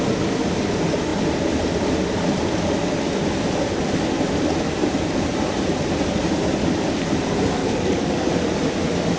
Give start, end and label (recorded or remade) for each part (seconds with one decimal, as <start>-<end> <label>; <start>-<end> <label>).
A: 0.0-7.6 recorded; 7.6-8.3 remade; 8.3-9.2 recorded